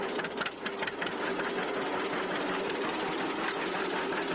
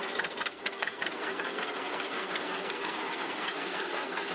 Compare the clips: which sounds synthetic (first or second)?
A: second